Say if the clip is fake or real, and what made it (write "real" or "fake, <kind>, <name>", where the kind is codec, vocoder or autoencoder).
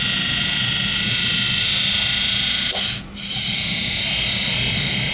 real